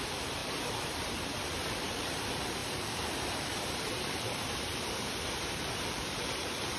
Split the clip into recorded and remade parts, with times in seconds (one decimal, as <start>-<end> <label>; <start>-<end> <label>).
0.0-6.8 remade